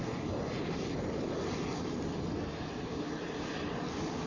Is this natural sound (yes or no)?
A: yes